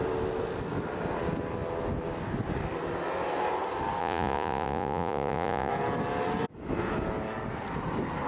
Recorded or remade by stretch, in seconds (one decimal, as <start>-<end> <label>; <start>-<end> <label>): 0.0-4.0 recorded; 4.0-5.7 remade; 5.7-8.3 recorded